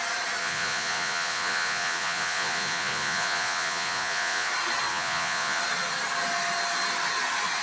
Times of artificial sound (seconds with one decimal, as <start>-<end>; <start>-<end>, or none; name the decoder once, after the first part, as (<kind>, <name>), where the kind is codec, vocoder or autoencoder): 0.4-4.5 (vocoder, Vocos); 4.9-5.6